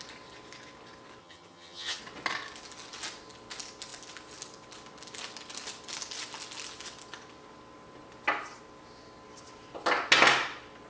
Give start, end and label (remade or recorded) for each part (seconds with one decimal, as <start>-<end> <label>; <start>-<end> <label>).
0.0-1.2 recorded; 1.2-2.0 remade; 2.0-10.9 recorded